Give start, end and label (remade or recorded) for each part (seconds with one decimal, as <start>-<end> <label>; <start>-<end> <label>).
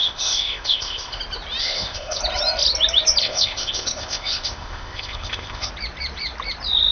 0.0-1.2 remade; 1.2-1.6 recorded; 1.6-2.2 remade; 2.2-3.2 recorded; 3.2-5.7 remade; 5.7-6.9 recorded